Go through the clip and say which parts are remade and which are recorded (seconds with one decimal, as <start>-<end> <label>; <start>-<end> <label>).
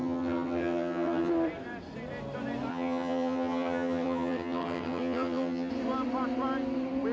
0.0-1.3 remade; 1.3-2.7 recorded; 2.7-5.7 remade; 5.7-7.1 recorded